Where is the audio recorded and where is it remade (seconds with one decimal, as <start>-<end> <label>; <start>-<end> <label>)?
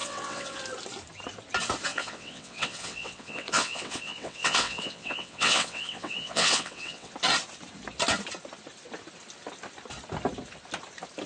0.0-0.6 remade; 0.6-1.9 recorded; 1.9-7.1 remade; 7.1-11.3 recorded